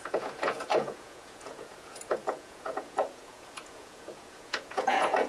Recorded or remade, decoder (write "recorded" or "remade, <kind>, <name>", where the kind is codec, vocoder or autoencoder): remade, vocoder, Vocos